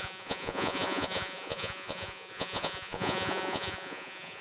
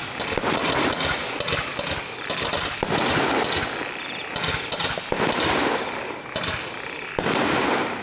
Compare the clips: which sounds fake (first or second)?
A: first